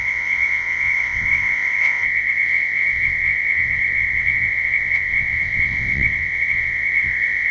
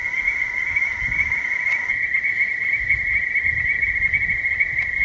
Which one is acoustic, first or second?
second